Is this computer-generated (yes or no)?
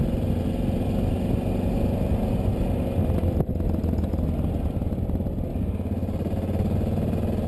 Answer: no